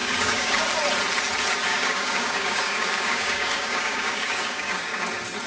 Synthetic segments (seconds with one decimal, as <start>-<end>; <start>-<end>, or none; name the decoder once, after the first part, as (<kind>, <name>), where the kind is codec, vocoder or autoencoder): 0.0-0.6 (codec, DAC); 1.7-5.0